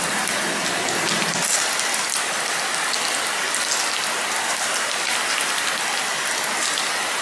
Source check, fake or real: real